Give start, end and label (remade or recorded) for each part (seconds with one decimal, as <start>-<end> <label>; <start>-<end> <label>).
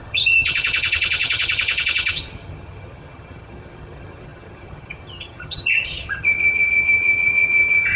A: 0.0-8.0 remade